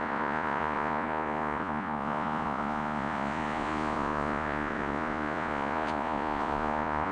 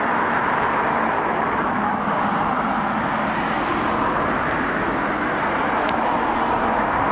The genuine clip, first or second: second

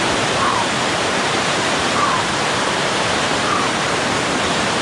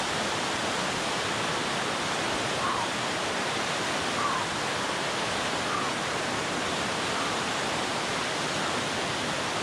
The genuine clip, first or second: second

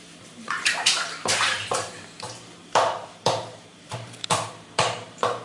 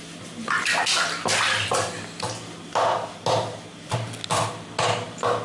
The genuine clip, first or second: second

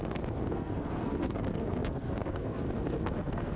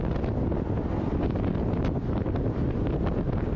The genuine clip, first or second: second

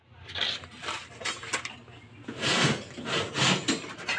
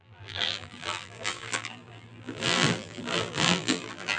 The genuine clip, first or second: first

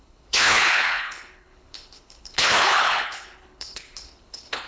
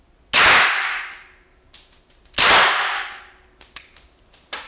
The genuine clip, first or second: second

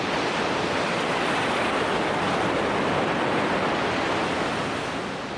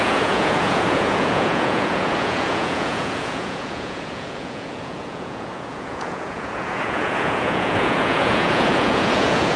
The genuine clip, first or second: first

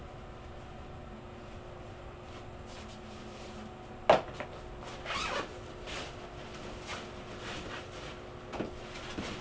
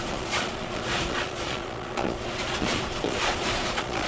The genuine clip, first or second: first